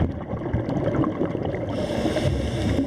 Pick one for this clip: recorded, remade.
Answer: recorded